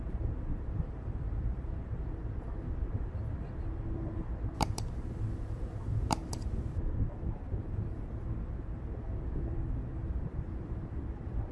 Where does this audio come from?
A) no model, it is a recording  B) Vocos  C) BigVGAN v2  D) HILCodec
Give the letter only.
C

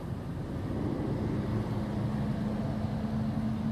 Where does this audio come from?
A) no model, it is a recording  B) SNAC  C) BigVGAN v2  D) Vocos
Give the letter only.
A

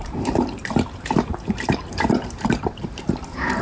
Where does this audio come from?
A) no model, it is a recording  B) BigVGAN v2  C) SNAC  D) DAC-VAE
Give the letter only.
B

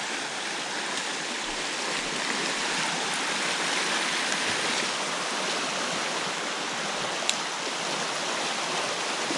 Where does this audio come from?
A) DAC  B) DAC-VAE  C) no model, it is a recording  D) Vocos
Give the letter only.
C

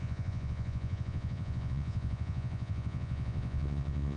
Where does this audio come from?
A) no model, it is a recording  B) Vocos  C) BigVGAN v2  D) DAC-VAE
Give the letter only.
B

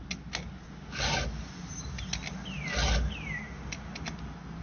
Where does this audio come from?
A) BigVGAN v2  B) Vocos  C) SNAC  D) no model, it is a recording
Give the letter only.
D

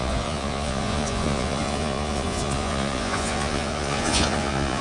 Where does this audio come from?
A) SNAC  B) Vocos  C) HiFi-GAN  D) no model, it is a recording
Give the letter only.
B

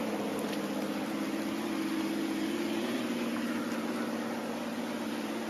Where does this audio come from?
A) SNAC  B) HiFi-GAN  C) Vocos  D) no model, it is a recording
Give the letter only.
D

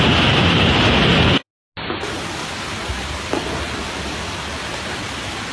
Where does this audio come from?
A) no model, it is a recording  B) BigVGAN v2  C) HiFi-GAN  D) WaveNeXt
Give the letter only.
A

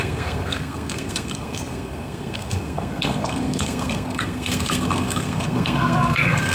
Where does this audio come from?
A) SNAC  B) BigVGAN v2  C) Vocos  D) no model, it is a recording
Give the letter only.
A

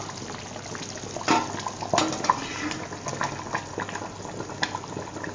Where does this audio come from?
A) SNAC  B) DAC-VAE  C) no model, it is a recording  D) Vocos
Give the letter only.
C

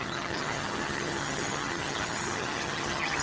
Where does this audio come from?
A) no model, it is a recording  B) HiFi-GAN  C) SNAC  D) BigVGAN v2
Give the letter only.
B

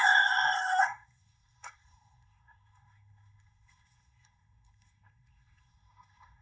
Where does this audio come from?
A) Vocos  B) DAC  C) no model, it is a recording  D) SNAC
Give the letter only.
D